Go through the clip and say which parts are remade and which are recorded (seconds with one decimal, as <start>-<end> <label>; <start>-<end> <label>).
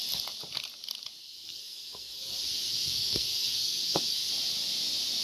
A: 0.0-1.2 recorded; 1.2-4.3 remade; 4.3-5.2 recorded